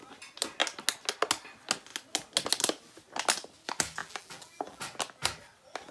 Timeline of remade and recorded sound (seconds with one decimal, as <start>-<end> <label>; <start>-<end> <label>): 0.0-4.0 recorded; 4.0-4.8 remade; 4.8-5.9 recorded

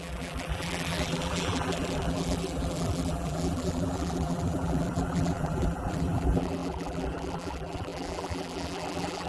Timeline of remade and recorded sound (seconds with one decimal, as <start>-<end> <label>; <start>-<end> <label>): 0.0-9.3 remade

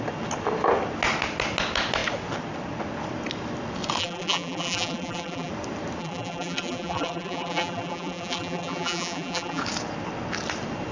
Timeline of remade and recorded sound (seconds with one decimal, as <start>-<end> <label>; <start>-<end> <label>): 0.0-4.0 recorded; 4.0-5.5 remade; 5.5-6.0 recorded; 6.0-9.6 remade; 9.6-10.9 recorded

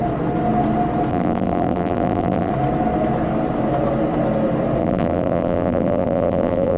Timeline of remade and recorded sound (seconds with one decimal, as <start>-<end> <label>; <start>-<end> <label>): 0.0-1.1 recorded; 1.1-2.5 remade; 2.5-4.8 recorded; 4.8-6.8 remade

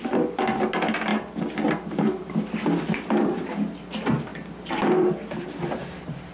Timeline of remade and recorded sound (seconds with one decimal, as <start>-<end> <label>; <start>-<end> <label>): 0.0-1.1 remade; 1.1-1.7 recorded; 1.7-6.3 remade

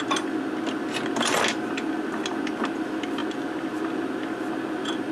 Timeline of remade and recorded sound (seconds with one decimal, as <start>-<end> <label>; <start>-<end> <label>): 0.0-5.1 recorded